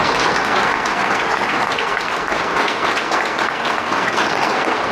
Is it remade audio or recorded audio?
remade